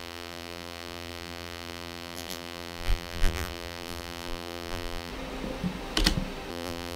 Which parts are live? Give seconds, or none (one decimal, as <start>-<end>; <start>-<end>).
5.1-6.5